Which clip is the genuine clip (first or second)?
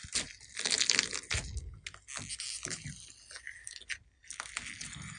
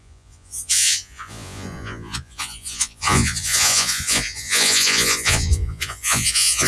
first